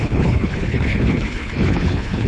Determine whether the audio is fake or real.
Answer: fake